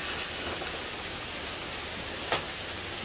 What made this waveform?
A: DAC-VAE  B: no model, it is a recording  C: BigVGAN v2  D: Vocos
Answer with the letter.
B